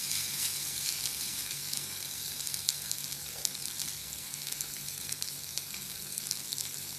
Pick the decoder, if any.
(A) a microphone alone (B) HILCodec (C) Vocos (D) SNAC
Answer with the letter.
D